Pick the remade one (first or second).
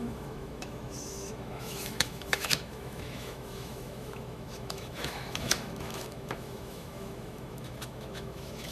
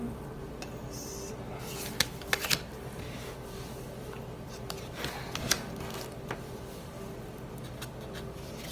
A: first